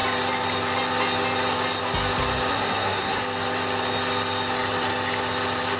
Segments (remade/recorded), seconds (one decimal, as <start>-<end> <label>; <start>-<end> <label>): 0.0-2.5 recorded; 2.5-3.2 remade; 3.2-5.8 recorded